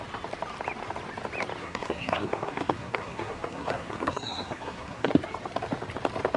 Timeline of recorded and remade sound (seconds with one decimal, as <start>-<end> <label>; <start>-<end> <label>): 0.0-1.6 recorded; 1.6-5.1 remade; 5.1-6.4 recorded

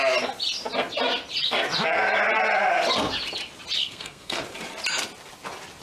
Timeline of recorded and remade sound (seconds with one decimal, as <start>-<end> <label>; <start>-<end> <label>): 0.0-3.8 recorded; 3.8-4.4 remade; 4.4-5.8 recorded

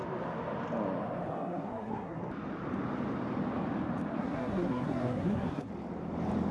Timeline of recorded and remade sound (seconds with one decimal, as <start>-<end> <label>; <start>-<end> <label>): 0.0-1.3 recorded; 1.3-2.2 remade; 2.2-4.1 recorded; 4.1-5.7 remade; 5.7-6.5 recorded

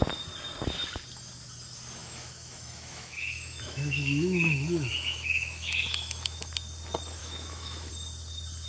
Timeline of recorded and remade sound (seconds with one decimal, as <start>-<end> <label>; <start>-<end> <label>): 0.0-2.0 recorded; 2.0-6.5 remade; 6.5-7.2 recorded; 7.2-7.9 remade; 7.9-8.7 recorded

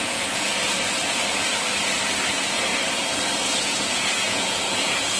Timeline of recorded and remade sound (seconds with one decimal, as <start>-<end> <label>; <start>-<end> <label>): 0.0-0.5 remade; 0.5-2.3 recorded; 2.3-2.7 remade; 2.7-3.6 recorded; 3.6-5.2 remade

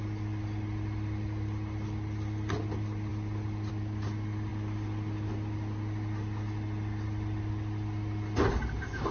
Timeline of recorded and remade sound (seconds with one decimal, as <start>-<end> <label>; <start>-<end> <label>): 0.0-9.1 recorded

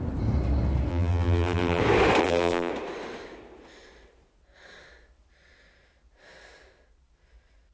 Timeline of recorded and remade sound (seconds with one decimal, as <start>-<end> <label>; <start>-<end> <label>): 0.0-0.9 recorded; 0.9-1.8 remade; 1.8-2.2 recorded; 2.2-2.7 remade; 2.7-7.7 recorded

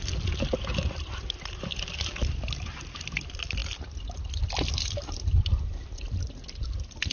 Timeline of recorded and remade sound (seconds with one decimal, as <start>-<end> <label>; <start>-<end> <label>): 0.0-7.1 recorded